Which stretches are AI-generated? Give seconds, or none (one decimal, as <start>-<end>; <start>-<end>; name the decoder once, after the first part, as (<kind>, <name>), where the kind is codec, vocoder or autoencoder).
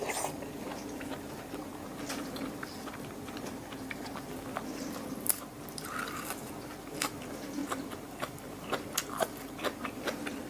none